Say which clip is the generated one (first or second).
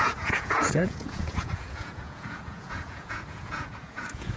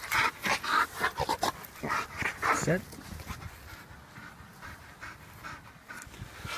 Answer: first